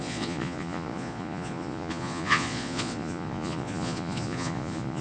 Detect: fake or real fake